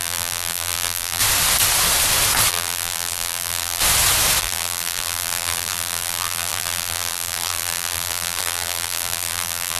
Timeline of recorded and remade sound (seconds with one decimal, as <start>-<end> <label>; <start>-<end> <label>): 0.0-1.2 remade; 1.2-2.5 recorded; 2.5-3.8 remade; 3.8-4.4 recorded; 4.4-9.8 remade